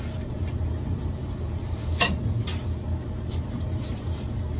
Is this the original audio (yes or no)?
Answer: no